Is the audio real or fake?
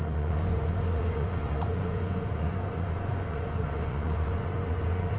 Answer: fake